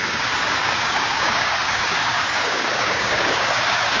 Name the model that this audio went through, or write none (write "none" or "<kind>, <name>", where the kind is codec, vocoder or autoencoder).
codec, DAC